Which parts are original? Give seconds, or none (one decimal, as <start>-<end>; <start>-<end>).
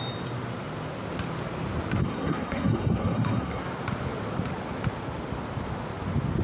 0.0-2.0; 3.6-6.4